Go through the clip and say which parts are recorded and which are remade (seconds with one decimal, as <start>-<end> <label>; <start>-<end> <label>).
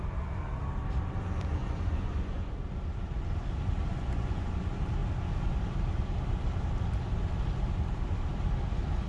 0.0-1.6 recorded; 1.6-2.5 remade; 2.5-3.9 recorded; 3.9-4.5 remade; 4.5-9.1 recorded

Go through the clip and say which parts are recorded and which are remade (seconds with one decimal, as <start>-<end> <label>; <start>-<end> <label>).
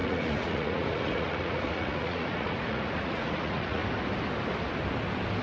0.0-3.8 remade; 3.8-5.4 recorded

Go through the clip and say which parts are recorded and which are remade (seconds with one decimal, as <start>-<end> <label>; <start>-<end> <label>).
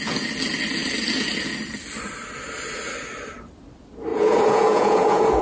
0.0-4.1 recorded; 4.1-5.4 remade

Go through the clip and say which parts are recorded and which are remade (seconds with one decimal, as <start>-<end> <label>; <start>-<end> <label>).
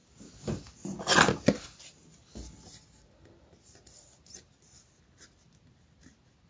0.0-6.5 recorded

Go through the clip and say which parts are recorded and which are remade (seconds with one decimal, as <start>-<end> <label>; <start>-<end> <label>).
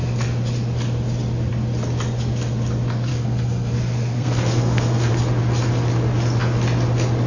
0.0-3.1 recorded; 3.1-5.1 remade; 5.1-7.3 recorded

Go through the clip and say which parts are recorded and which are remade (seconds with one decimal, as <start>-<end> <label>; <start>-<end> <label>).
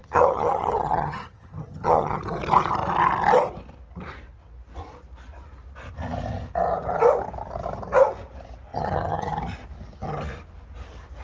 0.0-2.2 remade; 2.2-8.7 recorded; 8.7-9.3 remade; 9.3-11.2 recorded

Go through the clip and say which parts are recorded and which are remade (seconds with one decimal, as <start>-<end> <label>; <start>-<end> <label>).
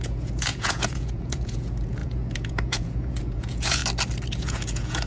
0.0-3.8 remade; 3.8-4.4 recorded; 4.4-5.1 remade